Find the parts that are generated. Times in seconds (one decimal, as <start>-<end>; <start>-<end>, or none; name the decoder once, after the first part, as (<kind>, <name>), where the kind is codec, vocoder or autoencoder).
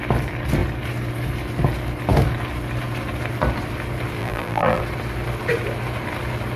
4.2-4.8 (vocoder, BigVGAN v2)